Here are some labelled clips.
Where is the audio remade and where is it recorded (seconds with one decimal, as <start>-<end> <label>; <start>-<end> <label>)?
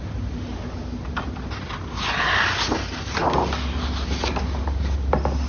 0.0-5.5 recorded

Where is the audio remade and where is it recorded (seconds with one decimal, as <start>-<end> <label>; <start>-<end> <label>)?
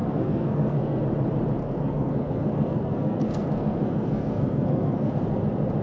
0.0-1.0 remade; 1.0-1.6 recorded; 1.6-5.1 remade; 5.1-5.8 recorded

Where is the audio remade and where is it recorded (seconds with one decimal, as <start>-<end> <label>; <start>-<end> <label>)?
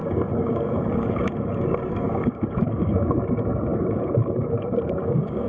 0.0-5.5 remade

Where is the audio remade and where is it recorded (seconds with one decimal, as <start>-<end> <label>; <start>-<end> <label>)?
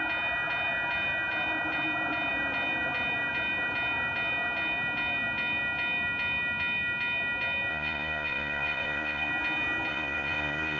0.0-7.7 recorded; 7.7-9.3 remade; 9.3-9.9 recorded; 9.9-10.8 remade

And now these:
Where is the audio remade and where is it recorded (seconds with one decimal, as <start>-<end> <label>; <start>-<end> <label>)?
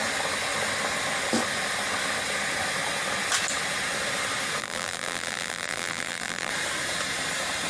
0.0-4.6 recorded; 4.6-6.5 remade; 6.5-7.7 recorded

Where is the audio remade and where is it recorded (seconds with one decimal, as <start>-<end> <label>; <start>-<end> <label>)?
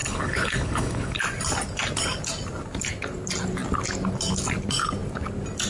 0.0-1.2 remade; 1.2-5.7 recorded